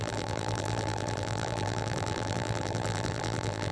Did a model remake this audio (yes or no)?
yes